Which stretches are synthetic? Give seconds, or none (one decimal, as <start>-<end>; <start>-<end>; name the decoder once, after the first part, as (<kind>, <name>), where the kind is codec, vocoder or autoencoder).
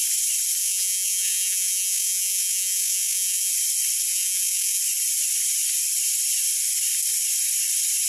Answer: 0.6-3.5 (vocoder, Vocos); 4.1-4.8